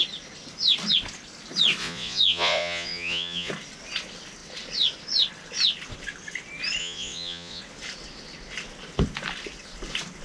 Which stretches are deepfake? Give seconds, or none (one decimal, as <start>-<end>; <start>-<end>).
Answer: 1.8-3.5; 6.8-7.6